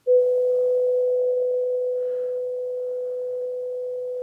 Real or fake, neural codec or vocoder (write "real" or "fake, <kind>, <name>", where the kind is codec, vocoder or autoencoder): real